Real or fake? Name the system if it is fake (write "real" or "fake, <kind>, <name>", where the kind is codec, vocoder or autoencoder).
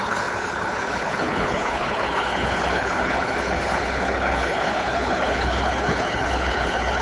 fake, codec, HILCodec